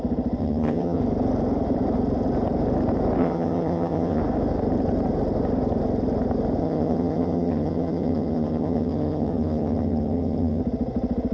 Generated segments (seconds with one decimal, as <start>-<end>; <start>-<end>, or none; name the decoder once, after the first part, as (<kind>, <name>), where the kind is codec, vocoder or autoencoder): 0.4-1.0 (vocoder, HiFi-GAN); 3.2-4.2; 6.6-10.6